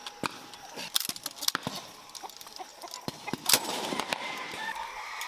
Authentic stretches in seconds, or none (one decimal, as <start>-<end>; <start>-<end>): 0.0-5.3